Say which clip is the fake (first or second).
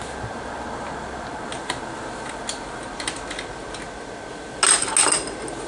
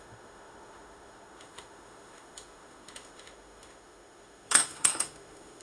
second